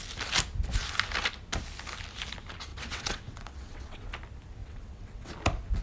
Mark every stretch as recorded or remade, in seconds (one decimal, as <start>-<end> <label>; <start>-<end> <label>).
0.0-2.7 recorded; 2.7-4.1 remade; 4.1-4.6 recorded; 4.6-5.3 remade; 5.3-5.8 recorded